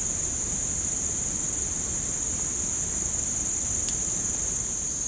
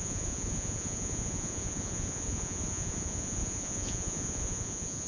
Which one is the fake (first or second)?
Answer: second